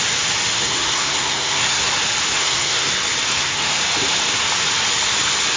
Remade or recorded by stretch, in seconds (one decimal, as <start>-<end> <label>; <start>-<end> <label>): 0.0-0.6 recorded; 0.6-1.9 remade; 1.9-2.3 recorded; 2.3-2.9 remade; 2.9-3.3 recorded; 3.3-3.8 remade; 3.8-5.6 recorded

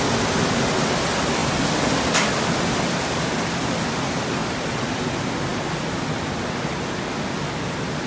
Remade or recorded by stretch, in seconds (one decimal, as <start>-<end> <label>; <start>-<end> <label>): 0.0-8.1 recorded

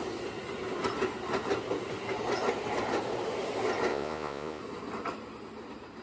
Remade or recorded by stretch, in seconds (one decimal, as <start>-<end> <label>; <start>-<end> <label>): 0.0-3.9 recorded; 3.9-4.6 remade; 4.6-6.0 recorded

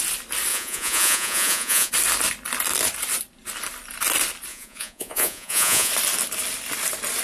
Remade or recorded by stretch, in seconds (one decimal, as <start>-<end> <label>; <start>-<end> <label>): 0.0-0.5 recorded; 0.5-1.9 remade; 1.9-4.5 recorded; 4.5-5.9 remade; 5.9-7.2 recorded

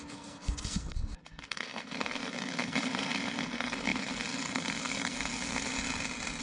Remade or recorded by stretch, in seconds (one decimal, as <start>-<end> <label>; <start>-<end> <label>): 0.0-5.7 remade; 5.7-6.4 recorded